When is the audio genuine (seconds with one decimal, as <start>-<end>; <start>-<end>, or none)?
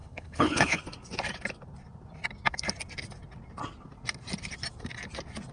0.8-5.5